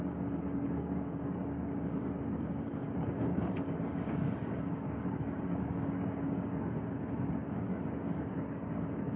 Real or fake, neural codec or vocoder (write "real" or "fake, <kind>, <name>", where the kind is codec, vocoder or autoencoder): fake, codec, DAC